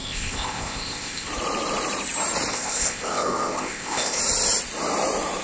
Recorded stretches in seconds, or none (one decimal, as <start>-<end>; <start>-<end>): 1.3-2.5; 4.2-5.4